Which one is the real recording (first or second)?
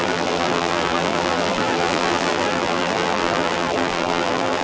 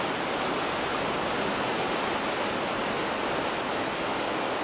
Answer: second